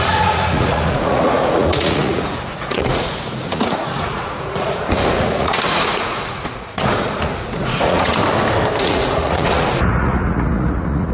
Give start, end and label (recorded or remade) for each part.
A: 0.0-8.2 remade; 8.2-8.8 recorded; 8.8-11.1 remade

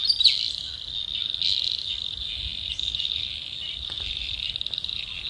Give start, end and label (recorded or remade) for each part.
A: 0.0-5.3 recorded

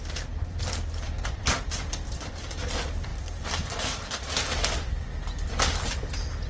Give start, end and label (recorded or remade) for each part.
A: 0.0-6.5 remade

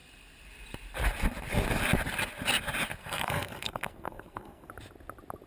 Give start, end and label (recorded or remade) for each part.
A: 0.0-3.0 recorded; 3.0-4.7 remade; 4.7-5.5 recorded